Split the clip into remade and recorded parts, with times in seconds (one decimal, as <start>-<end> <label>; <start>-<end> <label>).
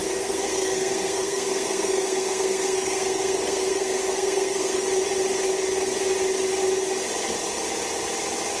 0.0-4.8 remade; 4.8-8.6 recorded